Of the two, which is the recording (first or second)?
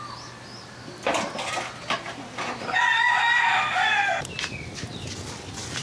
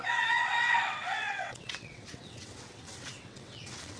first